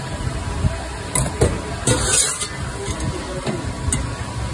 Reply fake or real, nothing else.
real